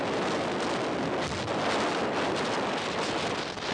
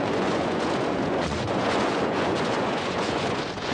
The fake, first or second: second